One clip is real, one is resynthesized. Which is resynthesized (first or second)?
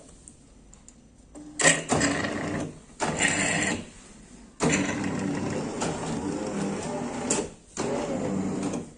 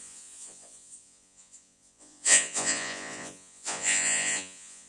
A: second